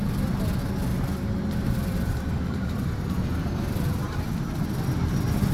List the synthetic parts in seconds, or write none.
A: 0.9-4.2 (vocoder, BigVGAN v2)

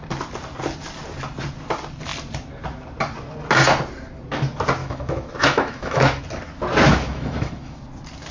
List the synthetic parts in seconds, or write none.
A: 4.8-6.2 (autoencoder, DAC-VAE); 6.9-7.8

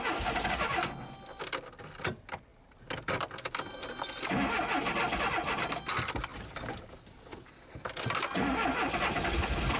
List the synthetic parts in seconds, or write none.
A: none

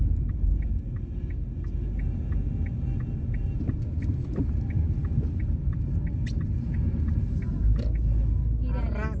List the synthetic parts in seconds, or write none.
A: none

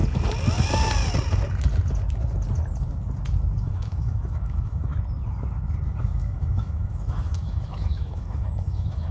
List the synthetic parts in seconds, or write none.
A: 3.6-4.9 (autoencoder, DAC-VAE); 6.0-9.1